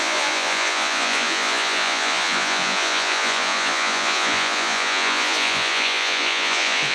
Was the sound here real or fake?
fake